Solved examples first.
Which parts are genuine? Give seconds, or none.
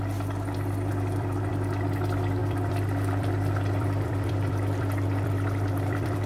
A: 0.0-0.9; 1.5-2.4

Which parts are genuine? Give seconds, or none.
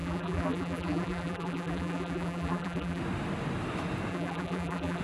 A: 3.0-4.1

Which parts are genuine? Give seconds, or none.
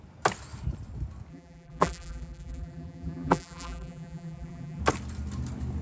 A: 0.0-1.3; 4.8-5.8